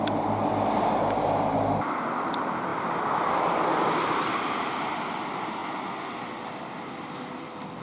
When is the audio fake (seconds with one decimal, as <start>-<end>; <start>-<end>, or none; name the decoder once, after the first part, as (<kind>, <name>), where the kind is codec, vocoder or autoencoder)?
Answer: none

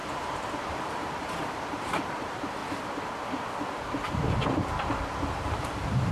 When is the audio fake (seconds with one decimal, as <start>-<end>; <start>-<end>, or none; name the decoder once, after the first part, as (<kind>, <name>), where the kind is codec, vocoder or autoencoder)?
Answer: 0.0-2.6 (vocoder, BigVGAN v2); 5.3-6.1

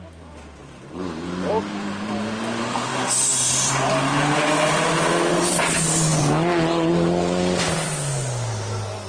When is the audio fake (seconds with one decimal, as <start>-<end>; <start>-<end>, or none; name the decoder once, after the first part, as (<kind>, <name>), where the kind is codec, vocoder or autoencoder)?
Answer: 0.6-1.5 (vocoder, BigVGAN v2)